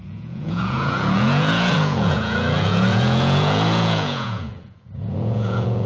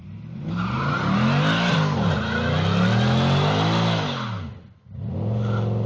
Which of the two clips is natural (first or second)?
second